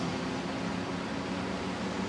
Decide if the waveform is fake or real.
real